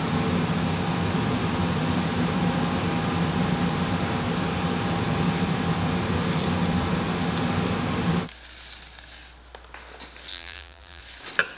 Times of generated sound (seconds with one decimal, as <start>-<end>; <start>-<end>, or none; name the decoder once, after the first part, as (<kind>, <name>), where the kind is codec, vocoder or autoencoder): 10.3-11.0 (vocoder, BigVGAN v2)